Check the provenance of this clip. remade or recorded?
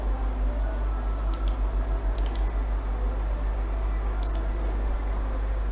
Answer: recorded